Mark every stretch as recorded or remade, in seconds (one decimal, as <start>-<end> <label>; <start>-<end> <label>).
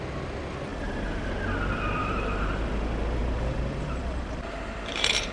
0.0-0.7 recorded; 0.7-1.3 remade; 1.3-2.0 recorded; 2.0-5.3 remade